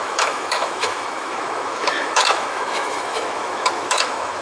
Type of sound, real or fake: fake